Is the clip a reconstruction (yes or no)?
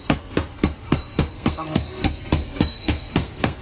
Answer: yes